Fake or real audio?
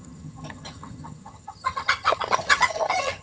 fake